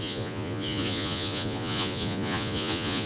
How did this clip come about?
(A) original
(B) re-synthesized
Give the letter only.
B